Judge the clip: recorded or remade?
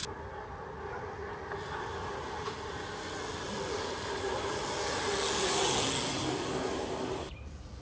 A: recorded